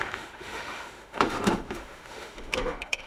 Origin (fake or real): fake